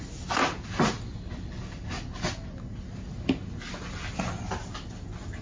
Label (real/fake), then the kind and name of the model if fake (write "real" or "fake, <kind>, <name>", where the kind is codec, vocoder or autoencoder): real